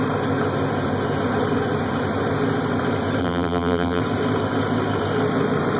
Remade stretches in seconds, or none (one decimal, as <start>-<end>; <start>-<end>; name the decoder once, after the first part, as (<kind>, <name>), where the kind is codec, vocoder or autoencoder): 3.2-4.0 (vocoder, BigVGAN v2)